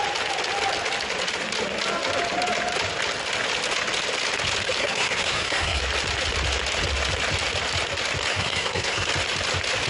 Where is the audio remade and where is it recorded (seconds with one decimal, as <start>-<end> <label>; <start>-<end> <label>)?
0.0-4.8 recorded; 4.8-5.8 remade; 5.8-8.3 recorded; 8.3-9.1 remade; 9.1-9.9 recorded